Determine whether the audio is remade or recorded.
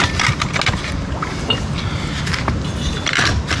recorded